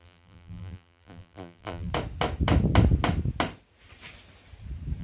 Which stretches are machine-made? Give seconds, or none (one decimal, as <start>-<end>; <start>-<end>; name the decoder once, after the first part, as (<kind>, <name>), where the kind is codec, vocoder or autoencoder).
0.0-1.9 (vocoder, BigVGAN v2)

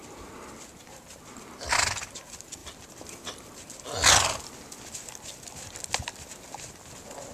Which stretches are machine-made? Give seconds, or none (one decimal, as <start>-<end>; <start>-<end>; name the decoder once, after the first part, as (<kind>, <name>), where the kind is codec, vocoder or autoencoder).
2.6-3.8 (vocoder, BigVGAN v2)